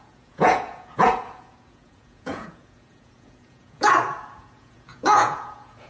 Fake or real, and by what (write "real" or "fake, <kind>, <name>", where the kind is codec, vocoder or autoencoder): fake, vocoder, Vocos